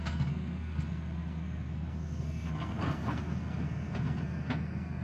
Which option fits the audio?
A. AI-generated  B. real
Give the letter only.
A